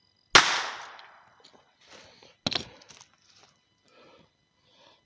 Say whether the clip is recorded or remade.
recorded